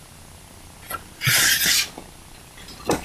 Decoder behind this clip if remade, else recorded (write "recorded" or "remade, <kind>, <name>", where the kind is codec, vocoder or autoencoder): recorded